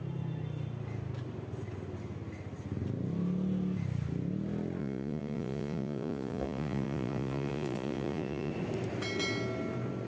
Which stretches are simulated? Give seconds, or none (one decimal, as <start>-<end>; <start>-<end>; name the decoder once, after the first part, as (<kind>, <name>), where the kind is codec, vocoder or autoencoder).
4.8-8.5 (vocoder, Vocos)

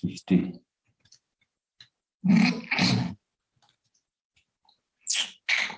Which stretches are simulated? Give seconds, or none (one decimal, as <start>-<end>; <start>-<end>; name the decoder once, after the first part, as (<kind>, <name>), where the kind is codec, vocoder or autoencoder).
none

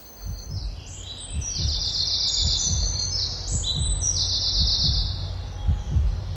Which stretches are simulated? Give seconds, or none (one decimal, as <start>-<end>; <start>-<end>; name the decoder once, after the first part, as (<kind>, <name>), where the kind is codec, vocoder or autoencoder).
none

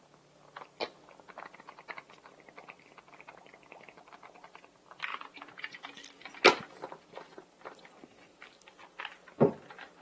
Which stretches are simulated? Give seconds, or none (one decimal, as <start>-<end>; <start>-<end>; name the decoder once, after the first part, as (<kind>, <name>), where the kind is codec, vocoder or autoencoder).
5.1-5.8 (vocoder, Vocos)

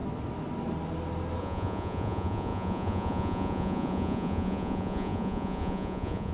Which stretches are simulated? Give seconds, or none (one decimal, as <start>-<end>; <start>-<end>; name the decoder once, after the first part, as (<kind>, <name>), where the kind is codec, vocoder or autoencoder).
1.4-6.3 (vocoder, Vocos)

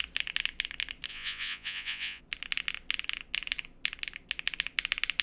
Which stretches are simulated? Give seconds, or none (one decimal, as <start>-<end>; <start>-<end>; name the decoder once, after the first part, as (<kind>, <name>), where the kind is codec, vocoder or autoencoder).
1.1-2.2 (vocoder, Vocos)

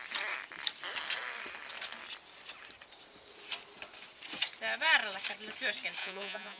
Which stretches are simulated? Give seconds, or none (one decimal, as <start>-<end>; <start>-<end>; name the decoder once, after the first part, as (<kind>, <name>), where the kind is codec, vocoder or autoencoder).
6.0-6.6 (vocoder, Vocos)

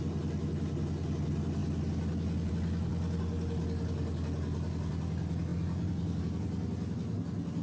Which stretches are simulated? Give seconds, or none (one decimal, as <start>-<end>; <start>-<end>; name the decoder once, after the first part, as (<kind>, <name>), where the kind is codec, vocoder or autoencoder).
none